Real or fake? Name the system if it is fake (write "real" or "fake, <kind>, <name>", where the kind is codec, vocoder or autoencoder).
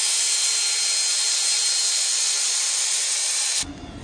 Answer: fake, vocoder, BigVGAN v2